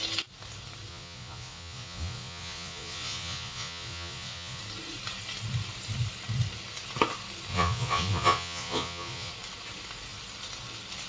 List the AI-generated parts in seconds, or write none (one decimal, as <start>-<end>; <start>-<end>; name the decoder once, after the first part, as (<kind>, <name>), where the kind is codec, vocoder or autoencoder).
0.9-4.6 (vocoder, Vocos); 7.5-9.3